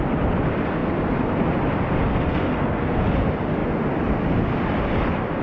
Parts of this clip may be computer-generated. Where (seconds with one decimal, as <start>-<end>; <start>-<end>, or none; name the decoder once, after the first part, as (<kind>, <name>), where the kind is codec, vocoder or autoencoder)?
2.1-3.0 (codec, SNAC)